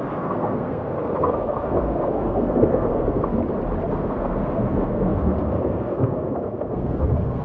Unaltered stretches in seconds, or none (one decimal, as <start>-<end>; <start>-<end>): 3.4-3.9